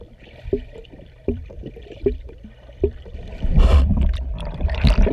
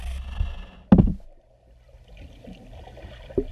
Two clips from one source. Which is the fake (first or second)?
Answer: first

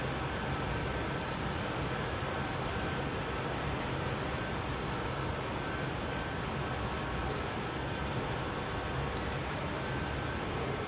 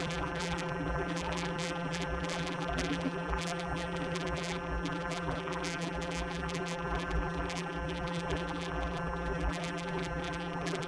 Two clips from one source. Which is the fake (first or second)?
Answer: second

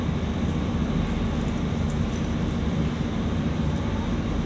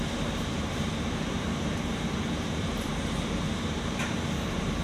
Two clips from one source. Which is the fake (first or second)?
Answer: second